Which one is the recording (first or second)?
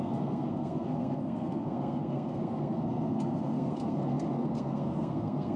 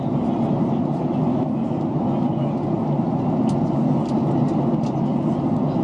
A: second